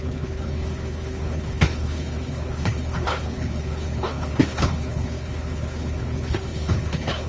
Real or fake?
fake